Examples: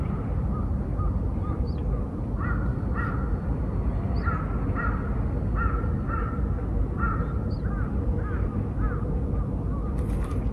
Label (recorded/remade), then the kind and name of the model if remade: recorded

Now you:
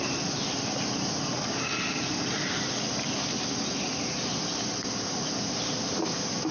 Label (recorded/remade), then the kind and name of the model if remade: recorded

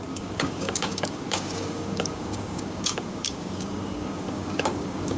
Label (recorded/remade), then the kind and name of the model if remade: remade, codec, DAC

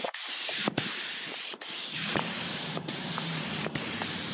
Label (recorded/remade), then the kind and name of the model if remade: remade, vocoder, BigVGAN v2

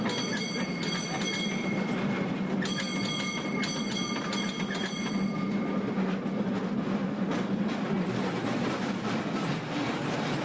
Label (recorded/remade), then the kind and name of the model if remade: recorded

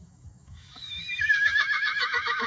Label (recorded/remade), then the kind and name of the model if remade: remade, autoencoder, DAC-VAE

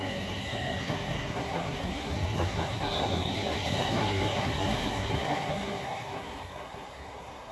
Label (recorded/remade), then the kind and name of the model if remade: remade, codec, SNAC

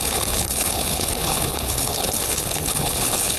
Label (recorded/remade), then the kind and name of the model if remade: remade, codec, HILCodec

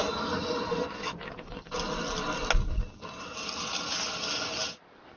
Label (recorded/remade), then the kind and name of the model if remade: recorded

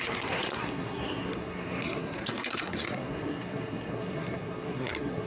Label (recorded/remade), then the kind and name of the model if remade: remade, codec, SNAC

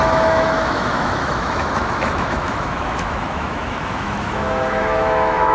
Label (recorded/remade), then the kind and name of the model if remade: remade, autoencoder, DAC-VAE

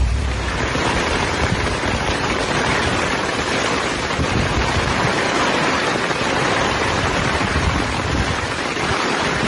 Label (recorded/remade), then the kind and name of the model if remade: remade, vocoder, BigVGAN v2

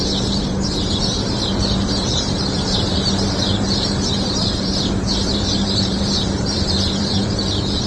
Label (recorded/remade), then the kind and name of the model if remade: remade, vocoder, BigVGAN v2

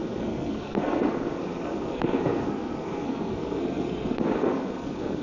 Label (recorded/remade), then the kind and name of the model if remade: remade, codec, SNAC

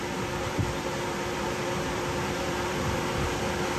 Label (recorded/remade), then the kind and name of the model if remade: remade, vocoder, BigVGAN v2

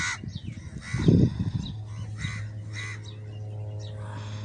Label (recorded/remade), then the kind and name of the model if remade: recorded